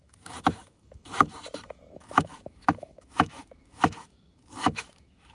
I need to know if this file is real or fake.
fake